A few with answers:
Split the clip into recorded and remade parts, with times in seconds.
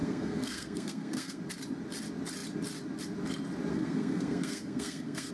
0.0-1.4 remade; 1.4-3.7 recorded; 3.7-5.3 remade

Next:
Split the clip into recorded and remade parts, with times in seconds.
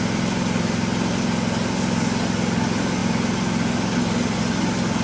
0.0-5.0 recorded